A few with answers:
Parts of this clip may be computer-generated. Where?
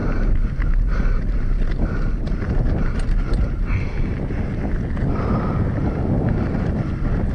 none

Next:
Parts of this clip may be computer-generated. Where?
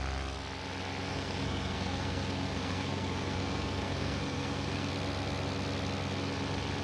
1.1-4.9 (codec, SNAC)